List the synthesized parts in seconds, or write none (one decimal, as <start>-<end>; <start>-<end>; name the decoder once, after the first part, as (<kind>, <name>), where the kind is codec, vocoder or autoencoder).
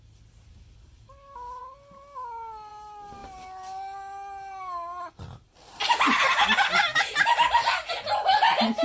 none